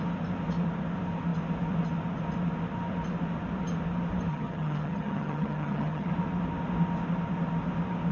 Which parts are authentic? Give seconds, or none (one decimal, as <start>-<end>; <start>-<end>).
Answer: 0.0-4.3; 6.1-8.1